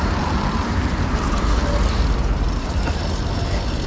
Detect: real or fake fake